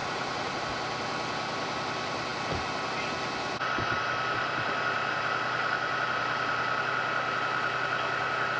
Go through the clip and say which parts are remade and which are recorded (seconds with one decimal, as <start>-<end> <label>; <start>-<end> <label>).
0.0-0.6 remade; 0.6-8.6 recorded

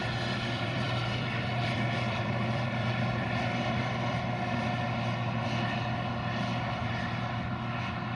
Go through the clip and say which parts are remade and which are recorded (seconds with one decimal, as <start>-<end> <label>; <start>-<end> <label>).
0.0-4.2 remade; 4.2-6.8 recorded; 6.8-7.4 remade; 7.4-8.1 recorded